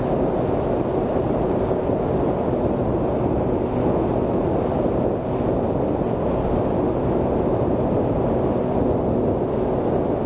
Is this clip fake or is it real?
real